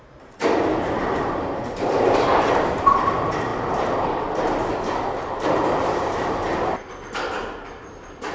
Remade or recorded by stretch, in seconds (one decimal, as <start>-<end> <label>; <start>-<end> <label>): 0.0-8.3 recorded